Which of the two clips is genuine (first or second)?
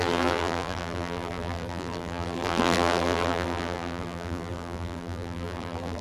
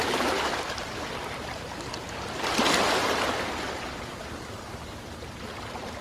second